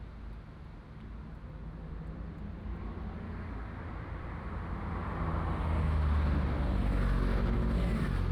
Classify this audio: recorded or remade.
recorded